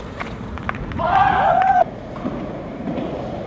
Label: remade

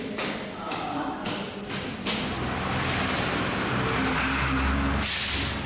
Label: recorded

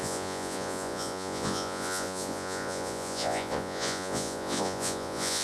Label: remade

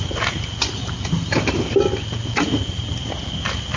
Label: recorded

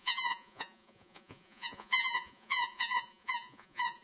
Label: remade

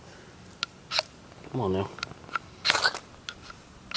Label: recorded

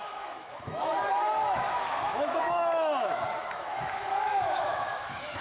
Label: remade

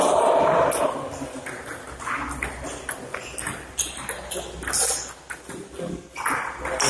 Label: recorded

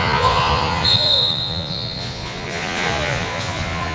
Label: remade